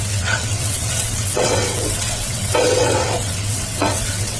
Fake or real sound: fake